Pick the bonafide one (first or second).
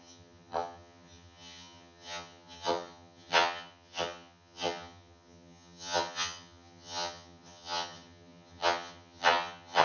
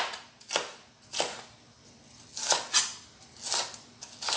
second